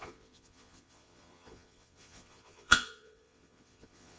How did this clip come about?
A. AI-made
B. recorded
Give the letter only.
A